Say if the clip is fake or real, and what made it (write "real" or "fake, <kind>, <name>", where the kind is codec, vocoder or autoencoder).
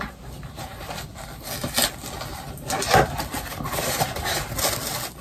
real